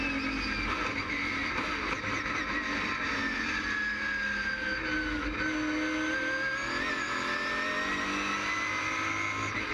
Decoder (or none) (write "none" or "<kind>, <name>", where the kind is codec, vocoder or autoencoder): none